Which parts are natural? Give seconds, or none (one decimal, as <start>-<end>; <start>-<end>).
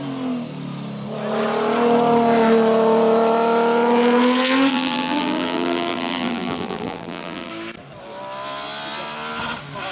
0.0-4.7; 7.5-9.9